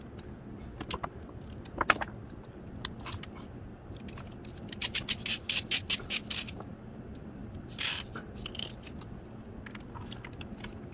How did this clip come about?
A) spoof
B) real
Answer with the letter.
B